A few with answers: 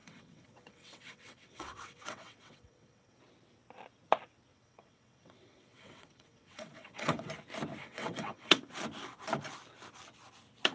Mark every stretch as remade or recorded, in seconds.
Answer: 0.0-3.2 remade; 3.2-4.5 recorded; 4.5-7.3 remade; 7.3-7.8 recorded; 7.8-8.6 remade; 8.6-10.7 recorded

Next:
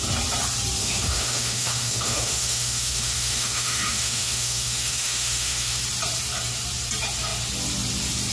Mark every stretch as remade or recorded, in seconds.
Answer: 0.0-0.8 recorded; 0.8-5.8 remade; 5.8-8.3 recorded

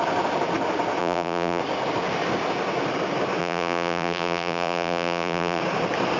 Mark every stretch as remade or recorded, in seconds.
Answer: 0.0-1.0 recorded; 1.0-1.6 remade; 1.6-3.4 recorded; 3.4-5.6 remade; 5.6-6.2 recorded